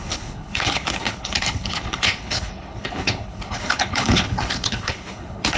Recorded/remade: remade